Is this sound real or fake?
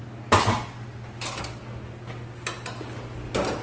real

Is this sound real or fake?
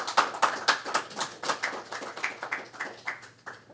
real